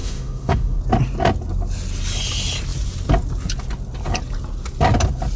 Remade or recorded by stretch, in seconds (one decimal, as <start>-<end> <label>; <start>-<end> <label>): 0.0-0.8 remade; 0.8-5.4 recorded